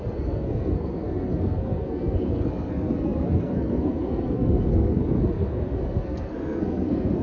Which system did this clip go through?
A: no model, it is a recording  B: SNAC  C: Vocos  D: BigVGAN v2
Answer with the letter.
B